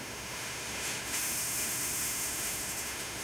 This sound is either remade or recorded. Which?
remade